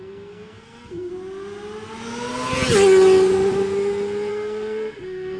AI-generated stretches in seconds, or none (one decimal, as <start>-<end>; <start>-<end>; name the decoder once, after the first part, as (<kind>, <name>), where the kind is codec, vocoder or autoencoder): 0.0-1.1 (codec, SNAC); 4.3-5.4